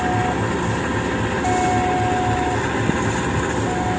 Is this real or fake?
real